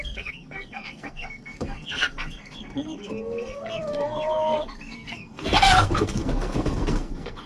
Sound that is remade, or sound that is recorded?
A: remade